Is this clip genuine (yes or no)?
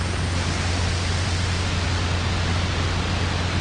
yes